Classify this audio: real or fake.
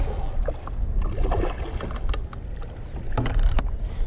real